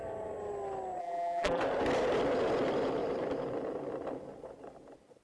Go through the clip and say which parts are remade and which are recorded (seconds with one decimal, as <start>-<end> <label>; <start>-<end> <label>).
0.0-1.0 recorded; 1.0-1.6 remade; 1.6-5.2 recorded